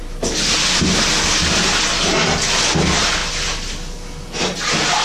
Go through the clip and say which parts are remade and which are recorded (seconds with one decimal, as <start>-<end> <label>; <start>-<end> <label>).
0.0-1.9 recorded; 1.9-2.6 remade; 2.6-5.0 recorded